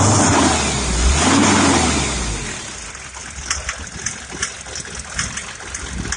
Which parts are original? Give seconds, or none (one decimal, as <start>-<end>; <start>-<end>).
0.0-6.2